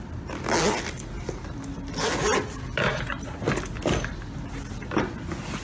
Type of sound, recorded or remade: recorded